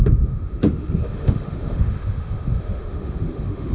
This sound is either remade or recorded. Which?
remade